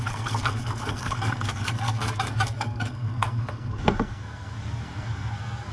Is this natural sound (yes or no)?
no